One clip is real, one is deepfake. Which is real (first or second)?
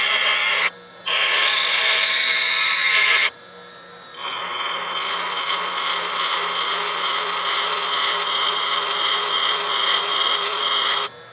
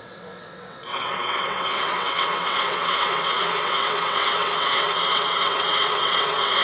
first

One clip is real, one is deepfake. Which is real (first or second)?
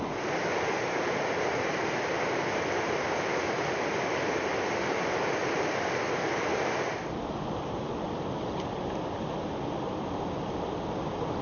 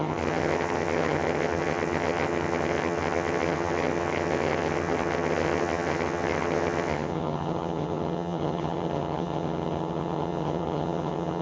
first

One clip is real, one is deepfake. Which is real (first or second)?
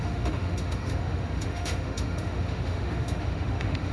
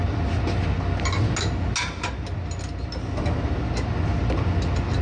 second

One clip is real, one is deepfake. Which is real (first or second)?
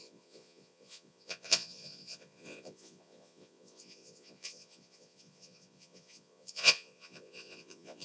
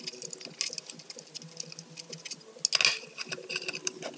second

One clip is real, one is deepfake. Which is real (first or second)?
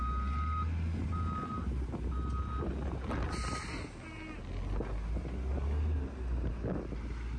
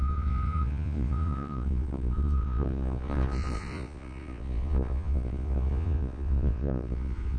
first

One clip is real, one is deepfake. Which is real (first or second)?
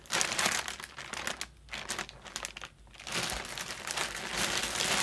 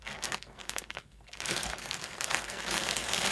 first